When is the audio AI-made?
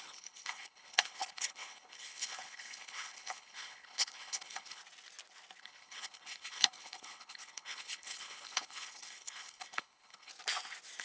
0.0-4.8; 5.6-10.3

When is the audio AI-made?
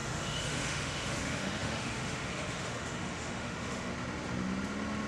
0.0-3.9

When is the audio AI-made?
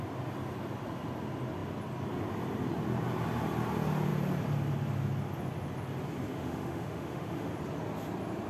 6.3-7.5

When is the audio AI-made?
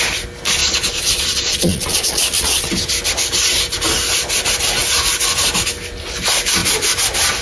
0.6-2.7